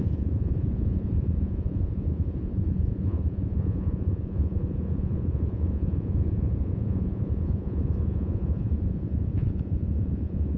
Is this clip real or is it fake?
fake